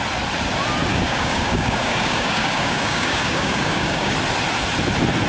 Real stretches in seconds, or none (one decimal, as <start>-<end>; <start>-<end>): 0.0-0.9; 4.1-5.3